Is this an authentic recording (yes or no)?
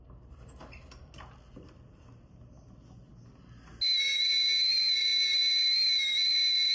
yes